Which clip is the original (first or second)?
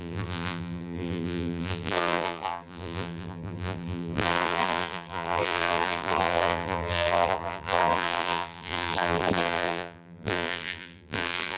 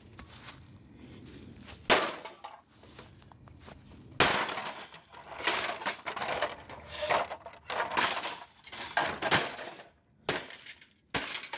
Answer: second